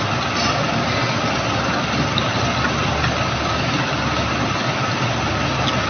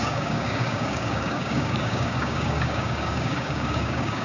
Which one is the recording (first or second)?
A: first